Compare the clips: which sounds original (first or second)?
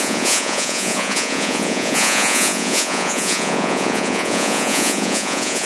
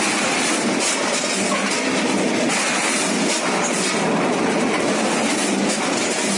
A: second